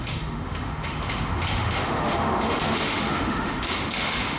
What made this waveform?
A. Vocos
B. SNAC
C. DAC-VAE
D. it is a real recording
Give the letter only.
C